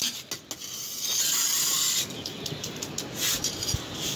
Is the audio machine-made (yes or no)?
no